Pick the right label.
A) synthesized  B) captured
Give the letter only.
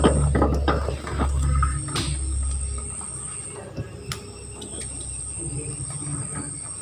B